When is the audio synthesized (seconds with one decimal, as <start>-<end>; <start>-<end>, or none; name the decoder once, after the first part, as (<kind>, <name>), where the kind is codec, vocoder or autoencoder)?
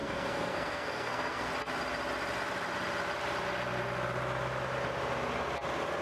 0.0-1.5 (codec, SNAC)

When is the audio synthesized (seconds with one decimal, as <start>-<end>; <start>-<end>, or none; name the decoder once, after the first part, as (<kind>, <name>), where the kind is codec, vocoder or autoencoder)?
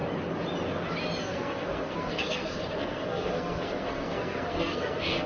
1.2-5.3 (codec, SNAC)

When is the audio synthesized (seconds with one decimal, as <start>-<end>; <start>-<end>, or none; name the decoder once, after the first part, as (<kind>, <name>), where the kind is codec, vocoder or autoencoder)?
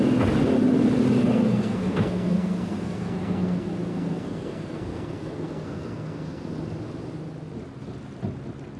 1.2-6.5 (codec, SNAC)